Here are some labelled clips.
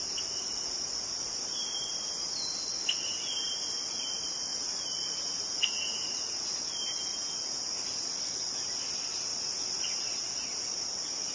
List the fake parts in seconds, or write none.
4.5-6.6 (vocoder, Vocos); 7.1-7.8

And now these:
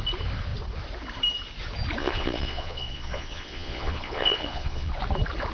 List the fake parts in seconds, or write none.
2.0-4.9 (vocoder, Vocos)